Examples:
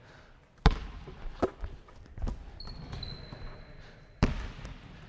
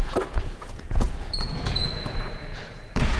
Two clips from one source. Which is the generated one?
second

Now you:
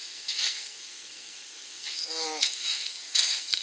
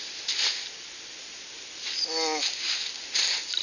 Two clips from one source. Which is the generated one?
first